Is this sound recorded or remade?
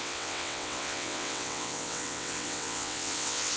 remade